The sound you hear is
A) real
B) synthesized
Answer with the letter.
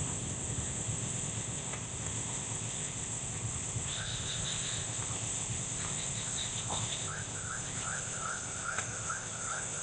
B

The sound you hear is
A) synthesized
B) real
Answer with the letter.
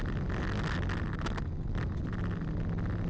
B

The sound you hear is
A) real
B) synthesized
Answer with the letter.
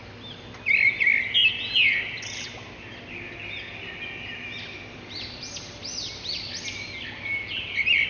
A